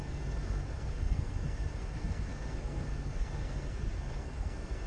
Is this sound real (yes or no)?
no